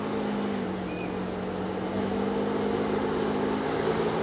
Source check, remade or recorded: recorded